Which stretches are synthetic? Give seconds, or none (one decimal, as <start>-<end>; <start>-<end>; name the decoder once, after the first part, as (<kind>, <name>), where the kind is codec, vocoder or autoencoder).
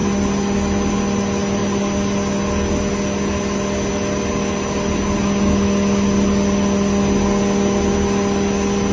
none